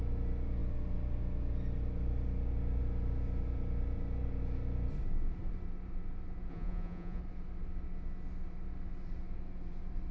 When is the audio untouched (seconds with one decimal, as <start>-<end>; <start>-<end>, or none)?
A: 0.0-6.5; 7.2-10.1